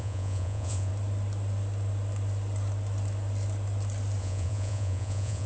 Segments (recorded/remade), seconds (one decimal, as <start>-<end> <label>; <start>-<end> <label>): 0.0-0.9 remade; 0.9-4.2 recorded; 4.2-5.5 remade